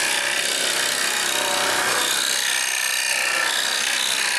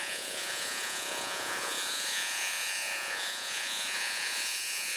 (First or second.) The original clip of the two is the first